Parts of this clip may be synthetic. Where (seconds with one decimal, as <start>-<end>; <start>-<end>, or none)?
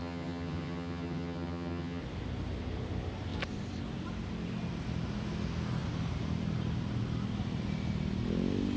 0.0-2.0